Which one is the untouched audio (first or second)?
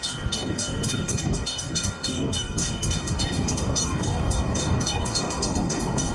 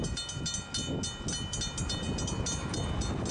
second